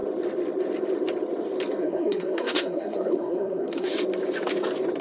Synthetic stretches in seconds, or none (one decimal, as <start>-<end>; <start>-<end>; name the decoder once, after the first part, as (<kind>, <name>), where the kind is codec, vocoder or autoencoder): 1.8-3.9 (codec, SNAC)